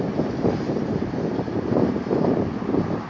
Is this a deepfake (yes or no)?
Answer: yes